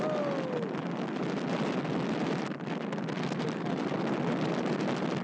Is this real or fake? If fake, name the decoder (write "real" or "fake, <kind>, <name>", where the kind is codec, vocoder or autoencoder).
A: real